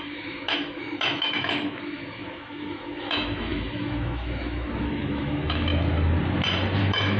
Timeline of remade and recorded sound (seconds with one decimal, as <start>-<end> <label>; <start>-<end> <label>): 0.0-5.7 remade; 5.7-6.8 recorded; 6.8-7.2 remade